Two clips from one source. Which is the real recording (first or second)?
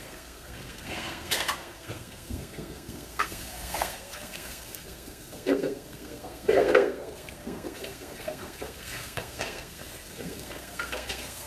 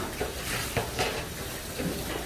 second